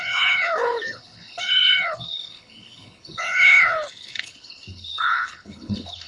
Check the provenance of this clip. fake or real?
fake